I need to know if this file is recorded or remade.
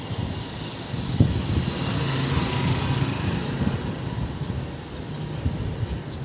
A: recorded